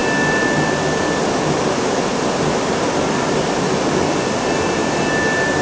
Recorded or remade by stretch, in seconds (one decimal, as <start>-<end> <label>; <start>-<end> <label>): 0.0-5.6 recorded